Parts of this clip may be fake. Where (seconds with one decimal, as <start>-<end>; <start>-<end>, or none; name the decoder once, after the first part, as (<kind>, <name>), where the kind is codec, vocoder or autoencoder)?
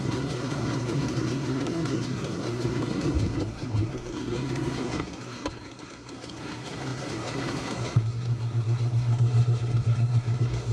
0.0-10.7 (codec, SNAC)